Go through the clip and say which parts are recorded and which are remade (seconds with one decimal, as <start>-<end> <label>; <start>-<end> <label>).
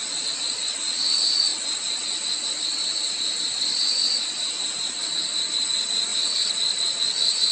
0.0-1.5 remade; 1.5-5.5 recorded; 5.5-7.5 remade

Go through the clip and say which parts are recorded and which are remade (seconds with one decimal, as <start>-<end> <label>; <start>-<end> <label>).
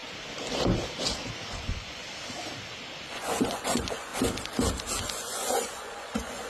0.0-1.5 recorded; 1.5-2.0 remade; 2.0-3.1 recorded; 3.1-4.1 remade; 4.1-5.0 recorded; 5.0-6.5 remade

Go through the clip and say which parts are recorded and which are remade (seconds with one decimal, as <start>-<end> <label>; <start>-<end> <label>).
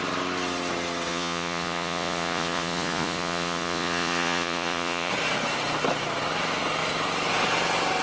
0.0-1.1 recorded; 1.1-5.1 remade; 5.1-8.0 recorded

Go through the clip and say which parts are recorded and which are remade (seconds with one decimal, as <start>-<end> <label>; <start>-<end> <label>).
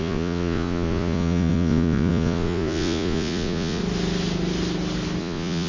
0.0-3.8 remade; 3.8-5.2 recorded; 5.2-5.7 remade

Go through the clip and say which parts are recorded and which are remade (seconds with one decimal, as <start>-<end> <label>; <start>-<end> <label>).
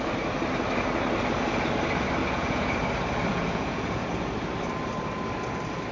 0.0-2.2 recorded; 2.2-2.8 remade; 2.8-3.3 recorded; 3.3-4.3 remade; 4.3-5.9 recorded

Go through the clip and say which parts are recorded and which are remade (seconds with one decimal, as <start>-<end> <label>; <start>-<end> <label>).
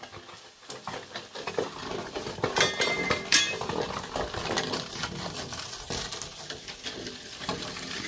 0.0-8.1 recorded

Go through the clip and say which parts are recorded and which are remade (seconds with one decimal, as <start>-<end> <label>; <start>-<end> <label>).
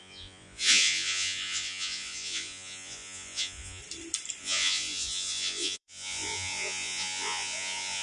0.0-3.8 remade; 3.8-4.4 recorded; 4.4-8.0 remade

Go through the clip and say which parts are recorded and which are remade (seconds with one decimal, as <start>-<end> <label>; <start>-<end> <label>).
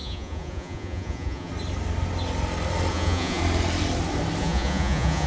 0.0-1.5 remade; 1.5-2.9 recorded; 2.9-3.4 remade; 3.4-4.4 recorded; 4.4-5.3 remade